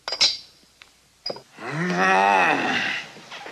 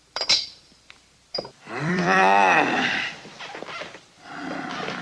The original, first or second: first